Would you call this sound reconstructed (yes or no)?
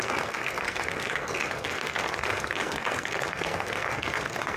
yes